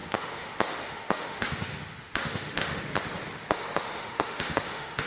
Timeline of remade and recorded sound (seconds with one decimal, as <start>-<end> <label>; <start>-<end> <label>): 0.0-2.8 remade; 2.8-3.4 recorded; 3.4-5.1 remade